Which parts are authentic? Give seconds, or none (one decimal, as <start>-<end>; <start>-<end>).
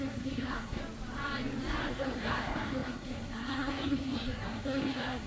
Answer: 0.8-1.9